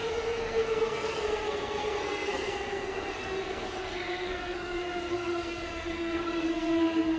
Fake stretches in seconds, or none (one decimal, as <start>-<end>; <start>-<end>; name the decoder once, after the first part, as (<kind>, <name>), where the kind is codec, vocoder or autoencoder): 0.0-7.2 (codec, SNAC)